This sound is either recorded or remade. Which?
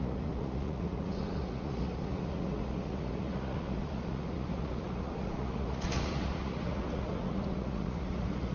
remade